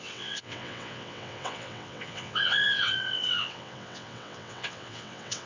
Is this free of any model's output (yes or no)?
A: no